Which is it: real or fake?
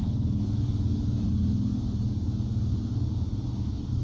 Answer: real